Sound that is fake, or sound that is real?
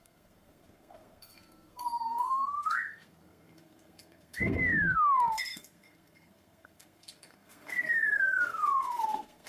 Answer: fake